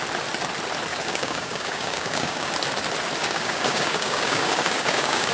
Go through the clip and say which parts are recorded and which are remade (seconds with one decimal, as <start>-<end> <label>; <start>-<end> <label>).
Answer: 0.0-0.9 recorded; 0.9-2.5 remade; 2.5-3.2 recorded; 3.2-5.3 remade